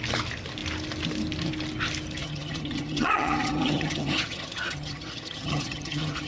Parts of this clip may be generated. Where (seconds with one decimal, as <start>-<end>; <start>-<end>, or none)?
2.2-6.3